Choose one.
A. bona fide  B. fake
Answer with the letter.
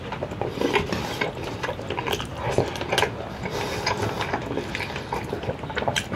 A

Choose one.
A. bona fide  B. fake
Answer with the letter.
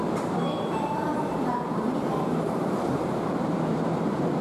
B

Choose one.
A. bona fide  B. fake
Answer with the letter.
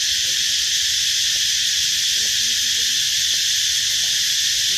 A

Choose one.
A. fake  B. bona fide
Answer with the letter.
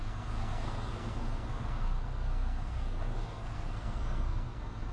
A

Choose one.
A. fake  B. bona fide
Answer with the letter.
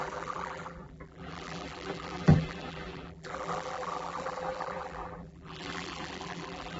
A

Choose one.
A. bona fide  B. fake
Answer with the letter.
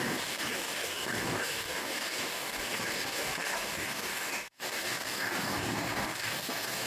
B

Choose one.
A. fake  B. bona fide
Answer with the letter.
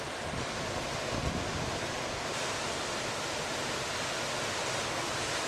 B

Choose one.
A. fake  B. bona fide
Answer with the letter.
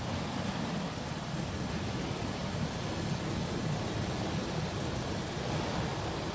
B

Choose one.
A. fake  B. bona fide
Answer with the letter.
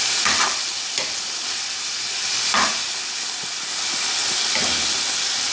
B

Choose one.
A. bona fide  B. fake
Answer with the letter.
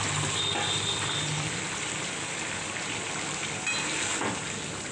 A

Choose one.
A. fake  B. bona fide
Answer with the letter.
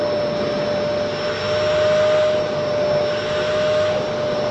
B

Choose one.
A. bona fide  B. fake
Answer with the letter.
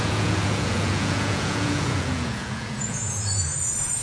B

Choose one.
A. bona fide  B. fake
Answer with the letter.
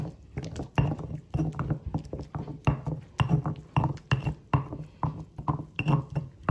A